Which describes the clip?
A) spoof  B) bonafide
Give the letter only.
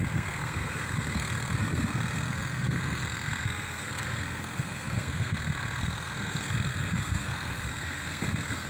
A